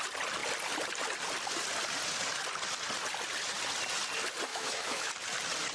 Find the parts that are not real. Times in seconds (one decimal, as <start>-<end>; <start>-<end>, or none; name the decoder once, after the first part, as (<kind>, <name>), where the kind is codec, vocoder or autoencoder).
4.5-5.1 (autoencoder, DAC-VAE)